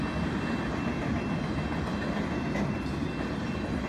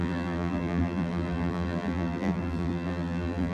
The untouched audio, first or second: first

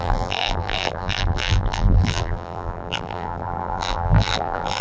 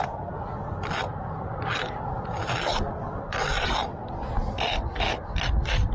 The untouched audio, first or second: second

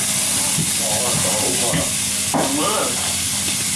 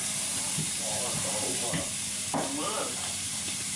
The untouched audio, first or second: first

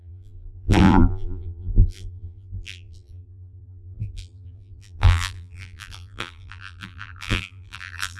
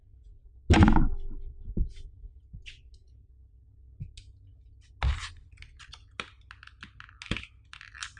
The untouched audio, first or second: second